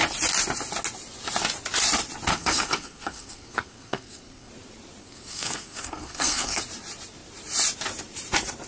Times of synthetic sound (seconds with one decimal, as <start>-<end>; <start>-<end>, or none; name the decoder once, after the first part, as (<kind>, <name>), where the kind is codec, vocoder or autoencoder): 2.3-4.5 (codec, SNAC); 5.0-6.6